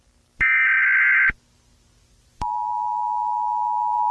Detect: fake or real real